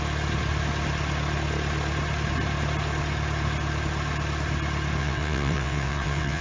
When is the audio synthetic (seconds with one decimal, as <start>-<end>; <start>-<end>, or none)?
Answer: 5.0-6.4